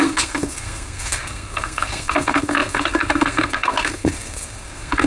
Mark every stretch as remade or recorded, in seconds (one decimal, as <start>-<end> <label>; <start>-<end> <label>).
0.0-5.1 remade